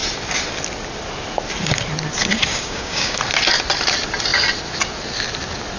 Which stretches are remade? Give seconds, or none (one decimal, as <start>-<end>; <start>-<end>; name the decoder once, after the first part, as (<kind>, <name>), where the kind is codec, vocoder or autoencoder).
2.5-3.2 (codec, DAC)

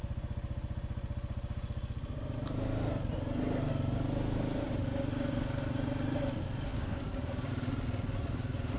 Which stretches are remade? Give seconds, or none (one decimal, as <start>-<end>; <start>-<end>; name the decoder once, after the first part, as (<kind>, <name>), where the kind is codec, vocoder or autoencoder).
6.7-7.5 (codec, DAC)

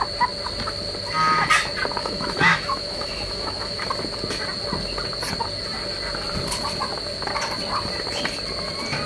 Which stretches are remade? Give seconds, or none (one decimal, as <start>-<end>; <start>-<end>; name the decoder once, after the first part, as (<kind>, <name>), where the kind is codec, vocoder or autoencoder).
2.0-3.8 (autoencoder, DAC-VAE)

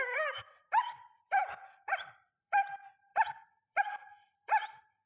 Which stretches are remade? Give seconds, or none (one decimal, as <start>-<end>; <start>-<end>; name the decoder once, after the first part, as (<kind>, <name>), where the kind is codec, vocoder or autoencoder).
0.0-3.1 (vocoder, BigVGAN v2); 3.8-5.1

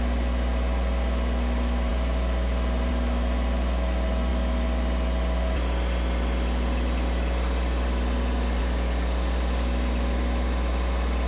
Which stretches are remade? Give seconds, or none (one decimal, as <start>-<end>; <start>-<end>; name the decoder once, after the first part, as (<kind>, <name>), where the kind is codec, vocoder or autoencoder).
none

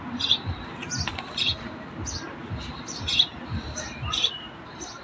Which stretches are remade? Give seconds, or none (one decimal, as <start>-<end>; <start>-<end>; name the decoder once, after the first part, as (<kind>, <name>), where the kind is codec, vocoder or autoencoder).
2.4-4.6 (vocoder, BigVGAN v2)

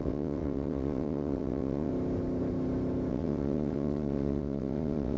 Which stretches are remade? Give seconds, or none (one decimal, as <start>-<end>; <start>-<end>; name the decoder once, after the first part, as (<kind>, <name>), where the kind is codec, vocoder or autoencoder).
0.0-1.9 (vocoder, WaveNeXt); 3.1-5.2

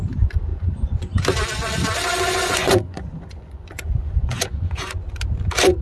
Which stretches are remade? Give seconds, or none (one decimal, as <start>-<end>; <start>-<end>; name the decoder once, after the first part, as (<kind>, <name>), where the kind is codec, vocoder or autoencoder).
0.5-1.2 (vocoder, Vocos); 2.1-5.1